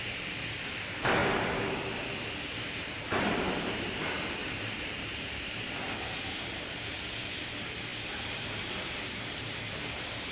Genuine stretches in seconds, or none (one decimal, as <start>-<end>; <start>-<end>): 1.2-2.8